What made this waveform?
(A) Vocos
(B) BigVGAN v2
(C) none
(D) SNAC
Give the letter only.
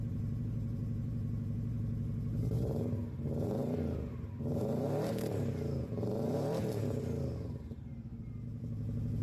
B